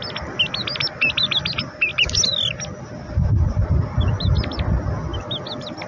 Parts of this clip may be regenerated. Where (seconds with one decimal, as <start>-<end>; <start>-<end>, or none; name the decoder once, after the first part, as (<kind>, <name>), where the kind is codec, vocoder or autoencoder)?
none

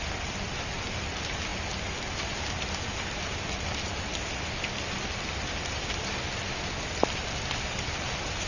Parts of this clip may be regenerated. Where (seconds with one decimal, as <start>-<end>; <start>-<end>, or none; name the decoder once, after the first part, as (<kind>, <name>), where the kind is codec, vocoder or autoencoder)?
none

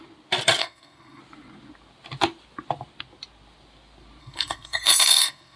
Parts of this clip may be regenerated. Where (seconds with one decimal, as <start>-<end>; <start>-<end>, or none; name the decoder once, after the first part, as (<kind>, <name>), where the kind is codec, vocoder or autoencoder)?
0.6-1.2 (codec, SNAC); 4.2-5.6

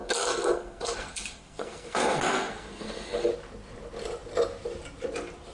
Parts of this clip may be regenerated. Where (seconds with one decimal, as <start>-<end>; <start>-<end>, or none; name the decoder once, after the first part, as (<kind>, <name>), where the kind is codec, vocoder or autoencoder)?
0.0-3.3 (codec, SNAC)

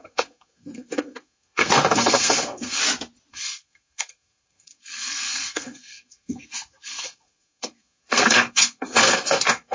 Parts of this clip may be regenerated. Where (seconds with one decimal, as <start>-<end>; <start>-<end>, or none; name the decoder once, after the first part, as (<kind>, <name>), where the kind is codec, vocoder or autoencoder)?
0.0-2.8 (codec, SNAC); 3.3-9.7